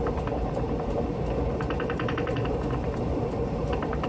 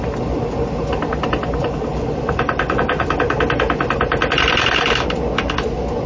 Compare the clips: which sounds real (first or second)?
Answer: second